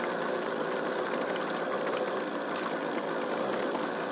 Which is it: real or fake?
real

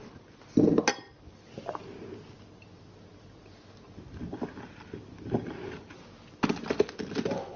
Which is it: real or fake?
real